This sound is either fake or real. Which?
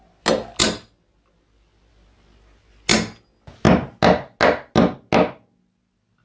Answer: real